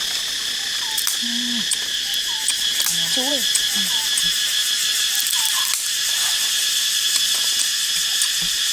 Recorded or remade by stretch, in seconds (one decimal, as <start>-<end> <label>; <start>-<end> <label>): 0.0-8.7 recorded